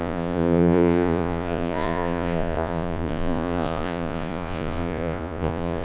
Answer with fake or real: fake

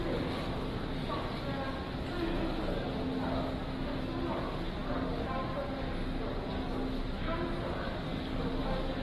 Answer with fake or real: real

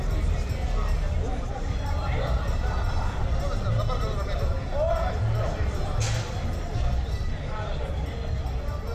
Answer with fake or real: real